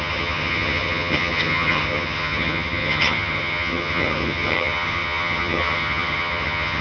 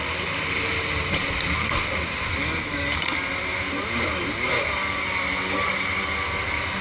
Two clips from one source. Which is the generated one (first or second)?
first